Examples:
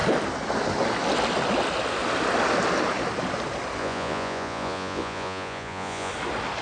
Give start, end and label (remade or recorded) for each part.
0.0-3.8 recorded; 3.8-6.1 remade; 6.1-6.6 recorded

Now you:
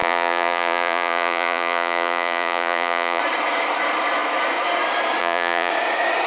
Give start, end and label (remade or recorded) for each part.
0.0-3.2 remade; 3.2-5.2 recorded; 5.2-5.7 remade; 5.7-6.3 recorded

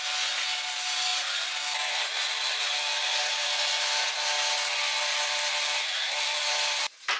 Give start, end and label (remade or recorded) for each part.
0.0-7.2 recorded

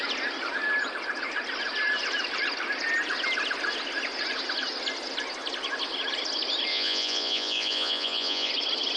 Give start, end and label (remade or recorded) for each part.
0.0-6.7 recorded; 6.7-8.5 remade; 8.5-9.0 recorded

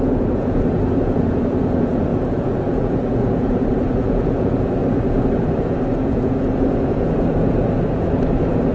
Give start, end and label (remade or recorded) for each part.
0.0-4.8 remade; 4.8-6.0 recorded; 6.0-8.7 remade

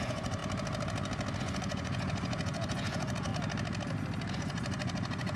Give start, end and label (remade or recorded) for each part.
0.0-0.4 remade; 0.4-1.4 recorded; 1.4-3.3 remade; 3.3-4.3 recorded; 4.3-5.4 remade

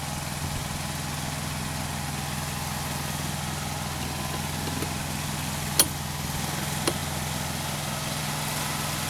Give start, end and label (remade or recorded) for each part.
0.0-9.1 recorded